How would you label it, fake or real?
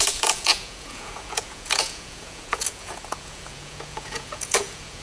fake